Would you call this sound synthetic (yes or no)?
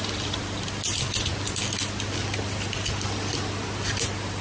no